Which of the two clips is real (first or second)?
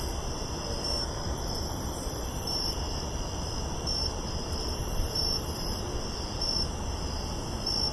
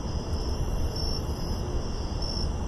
second